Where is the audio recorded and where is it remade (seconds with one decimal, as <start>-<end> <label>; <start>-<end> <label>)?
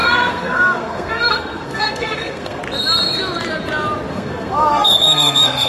0.0-2.6 remade; 2.6-4.1 recorded; 4.1-5.7 remade